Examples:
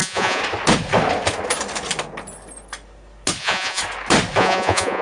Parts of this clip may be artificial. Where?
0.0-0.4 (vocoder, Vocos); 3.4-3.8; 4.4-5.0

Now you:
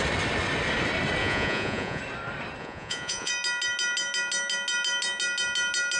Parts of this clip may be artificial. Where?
1.2-2.0 (vocoder, Vocos); 2.6-3.3

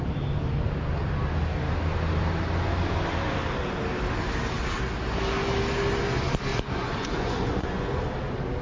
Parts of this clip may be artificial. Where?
6.5-8.0 (vocoder, Vocos)